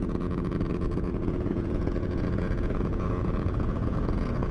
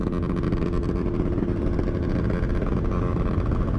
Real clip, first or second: second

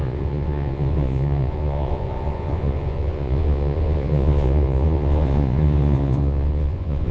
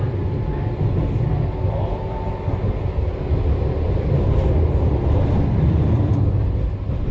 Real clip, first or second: second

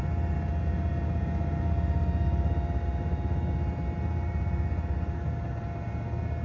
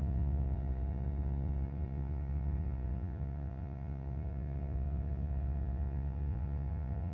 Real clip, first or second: first